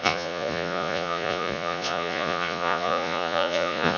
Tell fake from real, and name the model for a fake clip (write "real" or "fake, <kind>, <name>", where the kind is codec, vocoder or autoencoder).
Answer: fake, vocoder, Vocos